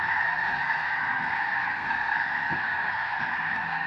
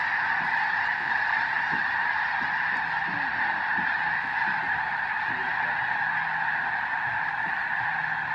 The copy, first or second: first